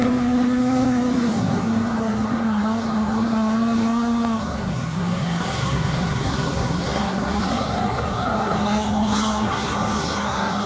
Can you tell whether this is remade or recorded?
remade